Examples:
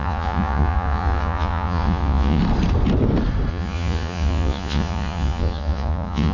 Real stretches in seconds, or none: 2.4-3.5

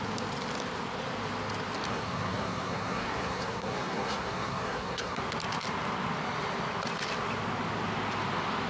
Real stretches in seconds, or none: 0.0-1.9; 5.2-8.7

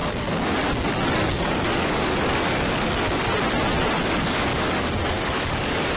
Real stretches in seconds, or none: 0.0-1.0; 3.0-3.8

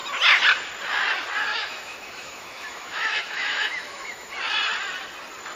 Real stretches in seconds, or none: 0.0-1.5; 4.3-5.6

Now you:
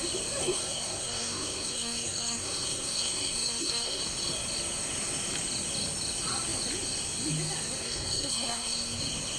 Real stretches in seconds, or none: 0.0-0.4; 4.0-7.8; 9.0-9.4

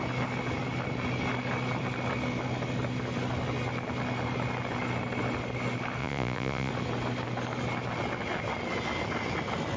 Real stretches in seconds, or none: 0.0-6.0; 6.7-9.8

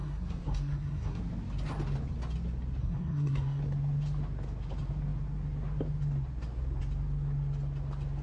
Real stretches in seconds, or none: 1.2-2.8; 3.6-8.2

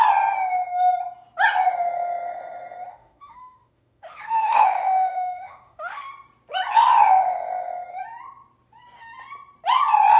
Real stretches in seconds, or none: 0.0-2.9; 6.1-10.2